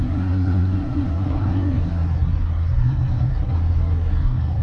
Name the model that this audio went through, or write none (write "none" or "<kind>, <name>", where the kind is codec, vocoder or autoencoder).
codec, SNAC